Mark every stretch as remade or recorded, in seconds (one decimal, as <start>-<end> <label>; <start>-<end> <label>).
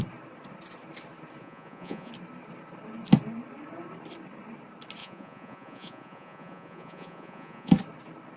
0.0-1.4 recorded; 1.4-2.1 remade; 2.1-5.0 recorded; 5.0-7.7 remade; 7.7-8.4 recorded